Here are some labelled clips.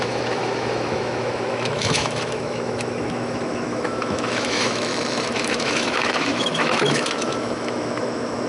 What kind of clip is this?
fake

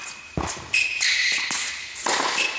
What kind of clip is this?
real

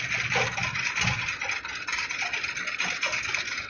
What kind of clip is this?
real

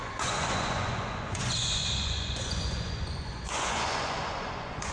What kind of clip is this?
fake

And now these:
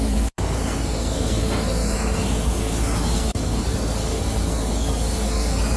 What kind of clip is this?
fake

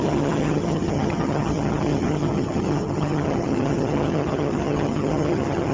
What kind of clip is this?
fake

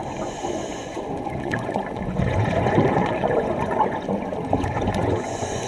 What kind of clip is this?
fake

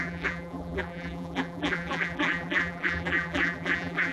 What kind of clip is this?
fake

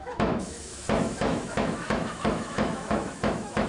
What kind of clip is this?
fake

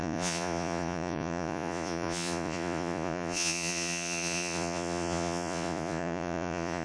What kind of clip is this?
fake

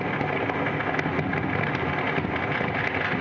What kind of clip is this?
real